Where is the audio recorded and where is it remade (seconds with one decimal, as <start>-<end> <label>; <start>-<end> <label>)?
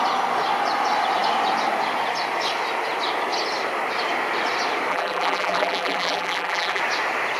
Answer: 0.0-4.9 recorded; 4.9-6.8 remade; 6.8-7.4 recorded